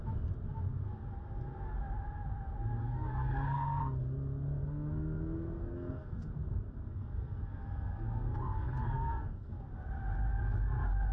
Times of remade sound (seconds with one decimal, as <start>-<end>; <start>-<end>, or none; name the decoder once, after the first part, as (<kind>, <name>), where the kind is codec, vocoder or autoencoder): 2.8-3.8 (codec, SNAC); 4.6-9.5